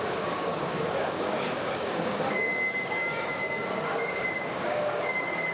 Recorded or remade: remade